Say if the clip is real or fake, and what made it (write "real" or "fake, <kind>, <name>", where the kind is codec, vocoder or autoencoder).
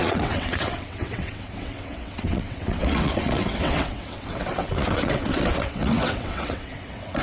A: fake, vocoder, WaveNeXt